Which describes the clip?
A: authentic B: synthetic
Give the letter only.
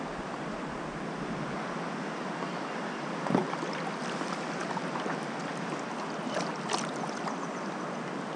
A